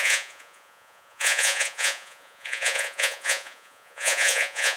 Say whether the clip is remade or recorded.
remade